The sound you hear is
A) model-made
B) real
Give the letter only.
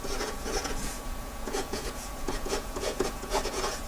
A